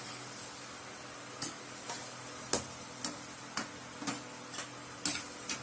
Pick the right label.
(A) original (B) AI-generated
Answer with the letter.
A